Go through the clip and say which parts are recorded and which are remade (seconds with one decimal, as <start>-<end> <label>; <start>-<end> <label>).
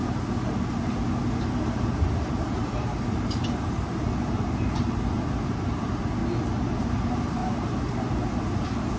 0.0-1.6 recorded; 1.6-6.2 remade; 6.2-6.8 recorded; 6.8-7.4 remade; 7.4-9.0 recorded